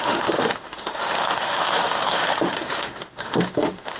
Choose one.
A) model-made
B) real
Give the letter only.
A